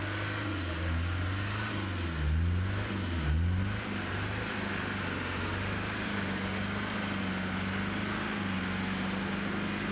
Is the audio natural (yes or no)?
yes